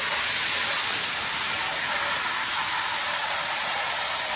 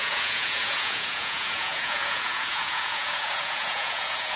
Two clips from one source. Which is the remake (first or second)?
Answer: second